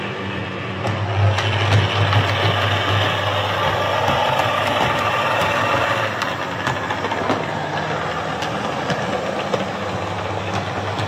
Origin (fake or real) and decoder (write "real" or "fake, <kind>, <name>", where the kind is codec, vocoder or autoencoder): real